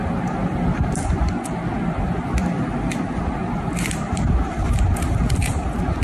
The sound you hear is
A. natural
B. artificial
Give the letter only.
B